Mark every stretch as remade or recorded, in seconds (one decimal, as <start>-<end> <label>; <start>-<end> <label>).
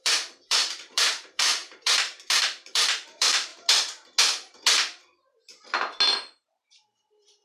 0.0-3.5 remade; 3.5-6.1 recorded; 6.1-7.4 remade